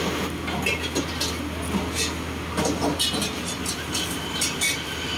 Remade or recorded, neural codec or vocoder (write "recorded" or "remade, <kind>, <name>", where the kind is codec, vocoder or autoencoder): recorded